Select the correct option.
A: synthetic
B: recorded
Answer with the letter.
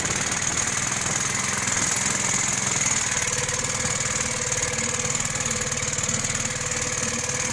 B